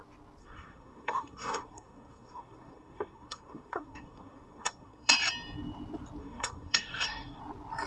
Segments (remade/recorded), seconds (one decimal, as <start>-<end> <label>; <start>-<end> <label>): 0.0-0.4 recorded; 0.4-5.1 remade; 5.1-6.2 recorded; 6.2-7.4 remade; 7.4-7.9 recorded